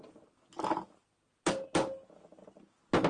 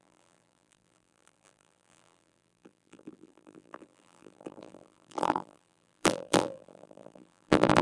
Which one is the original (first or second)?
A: first